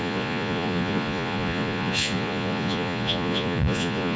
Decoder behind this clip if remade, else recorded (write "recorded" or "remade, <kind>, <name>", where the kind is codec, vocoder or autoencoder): remade, vocoder, Vocos